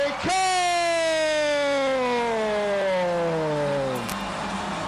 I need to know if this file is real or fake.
real